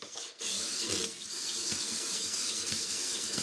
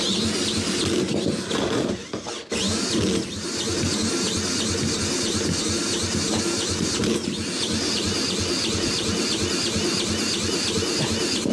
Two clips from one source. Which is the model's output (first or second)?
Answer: first